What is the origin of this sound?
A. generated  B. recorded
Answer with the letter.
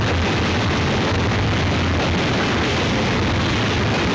B